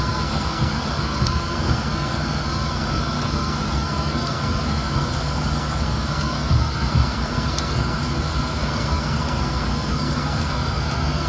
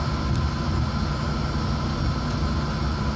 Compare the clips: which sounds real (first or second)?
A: second